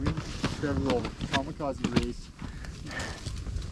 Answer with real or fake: real